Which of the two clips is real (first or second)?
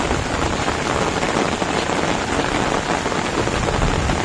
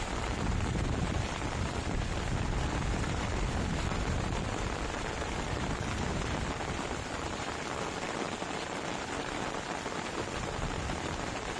first